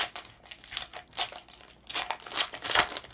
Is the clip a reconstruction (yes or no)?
no